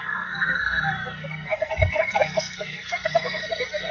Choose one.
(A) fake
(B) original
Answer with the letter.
A